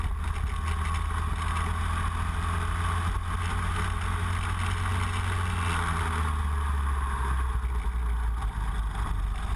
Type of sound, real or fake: real